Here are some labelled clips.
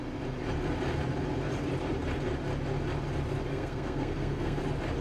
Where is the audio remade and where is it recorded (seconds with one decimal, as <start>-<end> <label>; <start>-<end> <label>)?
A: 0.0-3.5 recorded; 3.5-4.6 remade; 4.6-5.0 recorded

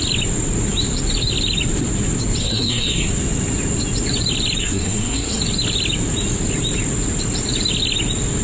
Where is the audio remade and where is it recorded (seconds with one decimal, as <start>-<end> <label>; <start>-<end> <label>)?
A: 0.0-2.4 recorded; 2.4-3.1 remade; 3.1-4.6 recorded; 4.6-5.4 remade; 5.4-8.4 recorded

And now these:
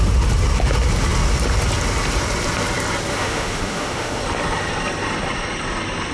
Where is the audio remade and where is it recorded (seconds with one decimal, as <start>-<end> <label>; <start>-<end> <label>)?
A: 0.0-3.1 recorded; 3.1-4.2 remade; 4.2-6.1 recorded

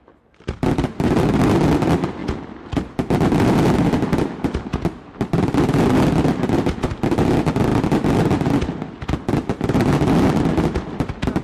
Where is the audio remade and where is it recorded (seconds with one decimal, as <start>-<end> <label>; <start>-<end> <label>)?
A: 0.0-11.4 recorded

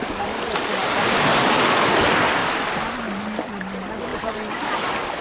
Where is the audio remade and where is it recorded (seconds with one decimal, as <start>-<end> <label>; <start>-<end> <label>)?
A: 0.0-2.4 recorded; 2.4-3.0 remade; 3.0-4.1 recorded; 4.1-4.6 remade; 4.6-5.2 recorded

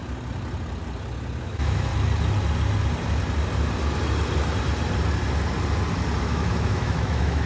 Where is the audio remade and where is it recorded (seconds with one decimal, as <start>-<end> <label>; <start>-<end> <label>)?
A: 0.0-1.4 recorded; 1.4-1.9 remade; 1.9-6.2 recorded; 6.2-7.5 remade

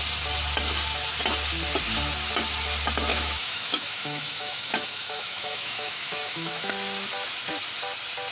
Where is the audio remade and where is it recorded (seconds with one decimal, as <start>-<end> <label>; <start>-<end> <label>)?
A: 0.0-3.1 recorded; 3.1-6.7 remade; 6.7-8.3 recorded

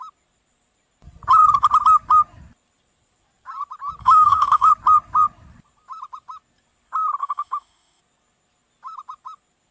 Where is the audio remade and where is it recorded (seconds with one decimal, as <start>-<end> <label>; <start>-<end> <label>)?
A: 0.0-4.0 recorded; 4.0-4.7 remade; 4.7-7.2 recorded; 7.2-8.0 remade; 8.0-9.7 recorded